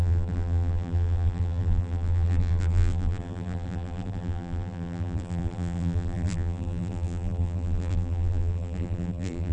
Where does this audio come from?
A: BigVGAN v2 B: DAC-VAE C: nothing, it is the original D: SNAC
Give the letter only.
A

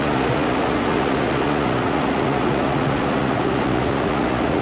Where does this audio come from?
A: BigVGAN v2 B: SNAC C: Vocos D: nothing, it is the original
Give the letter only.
C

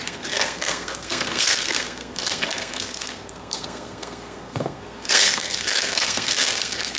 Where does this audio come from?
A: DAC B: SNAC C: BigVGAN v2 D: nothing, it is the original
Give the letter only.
B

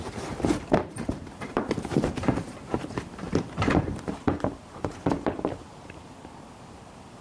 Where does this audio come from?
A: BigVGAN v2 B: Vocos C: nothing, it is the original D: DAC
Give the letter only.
A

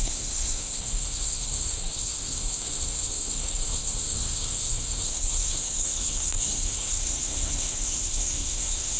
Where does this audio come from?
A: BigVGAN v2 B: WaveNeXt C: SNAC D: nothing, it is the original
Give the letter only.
C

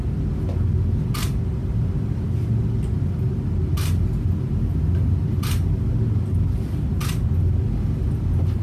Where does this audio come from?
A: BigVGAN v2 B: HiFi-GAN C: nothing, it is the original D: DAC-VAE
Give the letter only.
C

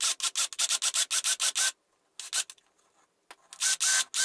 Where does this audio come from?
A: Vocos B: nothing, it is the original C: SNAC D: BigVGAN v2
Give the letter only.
B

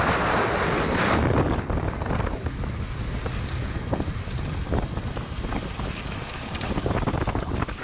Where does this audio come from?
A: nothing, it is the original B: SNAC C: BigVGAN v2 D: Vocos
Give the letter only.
A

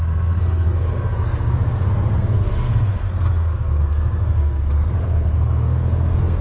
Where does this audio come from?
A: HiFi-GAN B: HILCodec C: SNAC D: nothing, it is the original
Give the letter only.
C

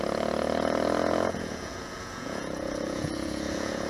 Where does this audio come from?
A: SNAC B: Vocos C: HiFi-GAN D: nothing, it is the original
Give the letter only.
B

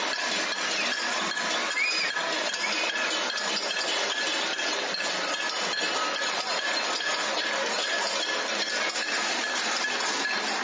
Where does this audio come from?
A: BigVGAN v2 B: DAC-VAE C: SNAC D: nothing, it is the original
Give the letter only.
D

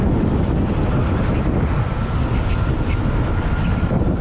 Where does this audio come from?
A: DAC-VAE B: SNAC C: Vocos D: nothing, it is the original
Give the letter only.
D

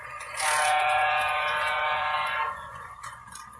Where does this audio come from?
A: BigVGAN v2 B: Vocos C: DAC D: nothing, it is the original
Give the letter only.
B